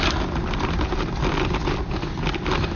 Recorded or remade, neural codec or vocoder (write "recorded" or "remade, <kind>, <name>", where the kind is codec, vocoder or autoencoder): recorded